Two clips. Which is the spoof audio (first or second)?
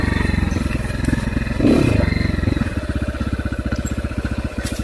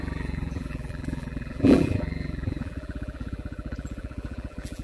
second